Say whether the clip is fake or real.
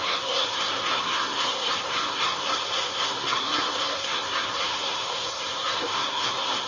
fake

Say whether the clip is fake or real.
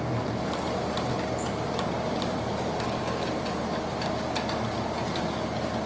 real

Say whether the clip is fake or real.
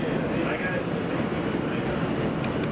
real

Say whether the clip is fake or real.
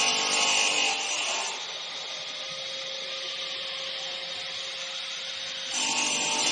real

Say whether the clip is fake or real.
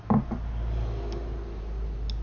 real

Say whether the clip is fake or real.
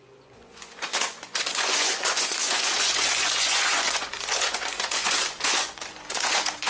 fake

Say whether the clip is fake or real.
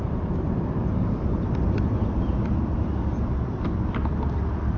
fake